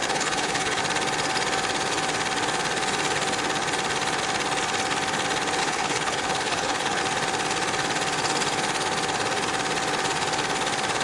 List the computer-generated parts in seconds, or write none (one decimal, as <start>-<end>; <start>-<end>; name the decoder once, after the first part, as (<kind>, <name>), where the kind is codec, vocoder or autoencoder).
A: 0.0-0.8 (codec, HILCodec); 5.6-7.0